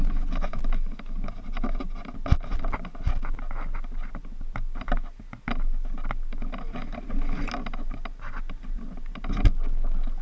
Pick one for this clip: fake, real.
real